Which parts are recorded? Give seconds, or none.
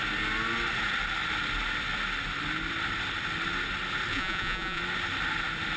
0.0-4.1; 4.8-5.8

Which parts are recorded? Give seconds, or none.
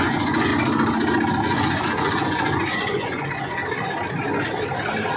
0.5-1.4; 3.6-5.2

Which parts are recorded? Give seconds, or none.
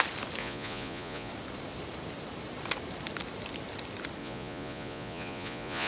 0.0-0.4; 1.3-4.2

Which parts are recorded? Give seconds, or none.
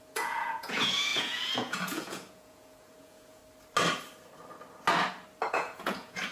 3.4-5.5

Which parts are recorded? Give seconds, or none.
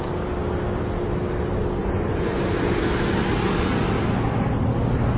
0.0-1.8; 2.4-5.2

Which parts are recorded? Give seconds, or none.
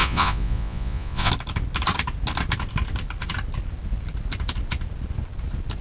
1.3-5.8